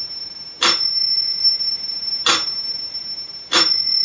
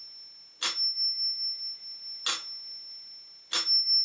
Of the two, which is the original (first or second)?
second